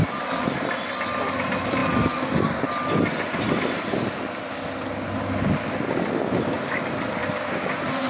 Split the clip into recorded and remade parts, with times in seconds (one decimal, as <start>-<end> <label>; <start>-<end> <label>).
0.0-8.1 recorded